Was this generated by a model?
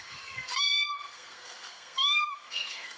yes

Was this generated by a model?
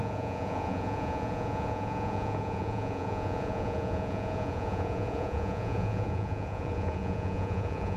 yes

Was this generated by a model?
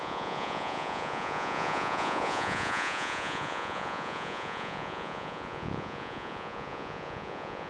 yes